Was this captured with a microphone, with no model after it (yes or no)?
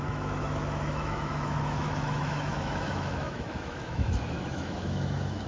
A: no